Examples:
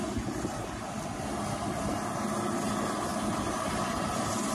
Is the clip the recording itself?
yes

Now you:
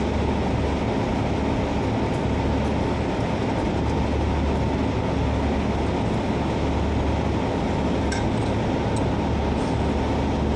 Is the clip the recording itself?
yes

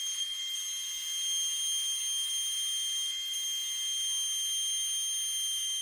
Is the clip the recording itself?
yes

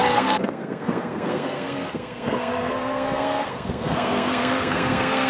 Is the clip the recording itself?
no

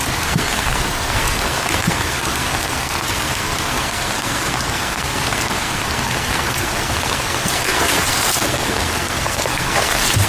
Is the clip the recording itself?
no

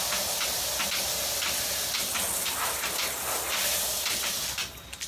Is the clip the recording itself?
yes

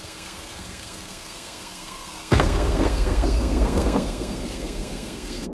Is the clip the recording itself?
no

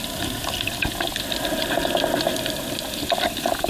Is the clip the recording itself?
yes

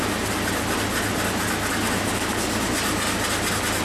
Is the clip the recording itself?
yes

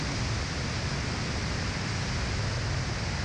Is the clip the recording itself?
yes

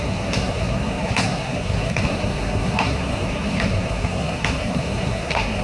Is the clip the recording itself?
no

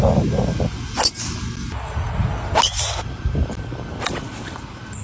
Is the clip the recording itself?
yes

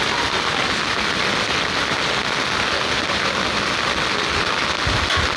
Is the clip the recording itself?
yes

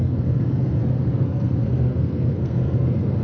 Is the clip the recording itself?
no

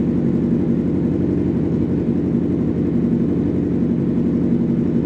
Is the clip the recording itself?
yes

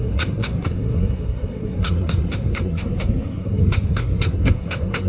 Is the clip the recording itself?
no